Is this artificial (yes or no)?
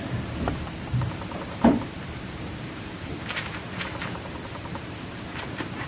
yes